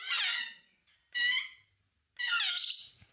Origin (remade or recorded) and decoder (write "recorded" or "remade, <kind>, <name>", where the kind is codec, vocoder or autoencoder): recorded